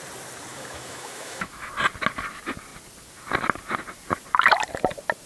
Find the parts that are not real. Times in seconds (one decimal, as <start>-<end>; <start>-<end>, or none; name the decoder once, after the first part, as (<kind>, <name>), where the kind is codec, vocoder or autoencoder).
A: 0.5-1.7 (autoencoder, DAC-VAE)